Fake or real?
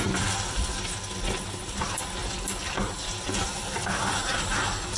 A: real